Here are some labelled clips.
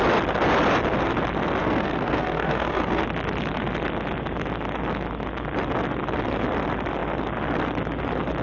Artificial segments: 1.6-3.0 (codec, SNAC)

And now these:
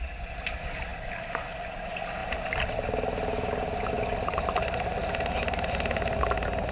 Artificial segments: none

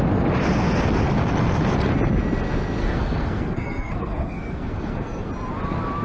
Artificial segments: 2.8-5.3 (codec, SNAC)

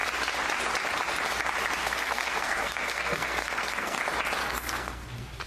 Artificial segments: 1.8-4.0 (codec, SNAC); 4.4-5.5